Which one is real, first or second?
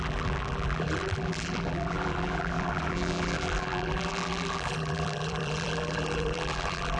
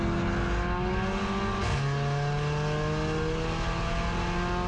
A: second